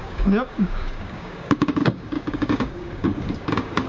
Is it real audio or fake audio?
fake